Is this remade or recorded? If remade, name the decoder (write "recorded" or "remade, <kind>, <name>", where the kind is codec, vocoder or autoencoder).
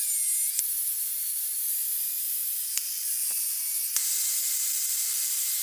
recorded